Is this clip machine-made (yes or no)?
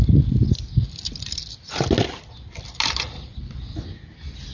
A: no